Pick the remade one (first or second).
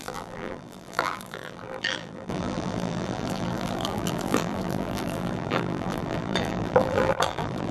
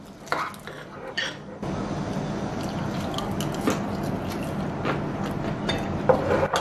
first